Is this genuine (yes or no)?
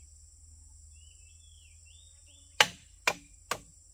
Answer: yes